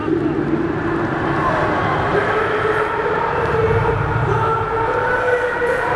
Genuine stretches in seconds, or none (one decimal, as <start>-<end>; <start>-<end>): 0.0-2.1